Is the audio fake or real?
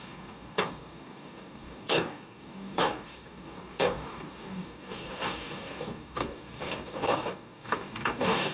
fake